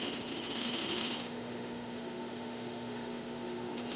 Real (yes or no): no